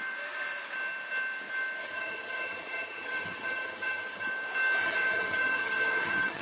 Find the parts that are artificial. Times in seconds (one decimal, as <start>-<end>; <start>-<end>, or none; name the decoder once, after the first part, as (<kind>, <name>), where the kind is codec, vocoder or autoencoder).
1.8-4.3 (vocoder, HiFi-GAN); 4.8-6.4